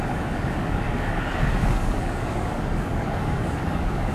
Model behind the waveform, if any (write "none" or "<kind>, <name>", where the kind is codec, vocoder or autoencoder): codec, DAC